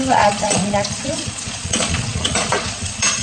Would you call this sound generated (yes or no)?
yes